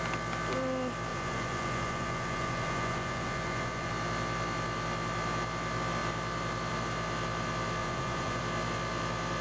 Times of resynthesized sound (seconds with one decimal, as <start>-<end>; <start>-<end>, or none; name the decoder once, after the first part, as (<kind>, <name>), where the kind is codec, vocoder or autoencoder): 1.1-3.9 (vocoder, Vocos); 7.8-8.4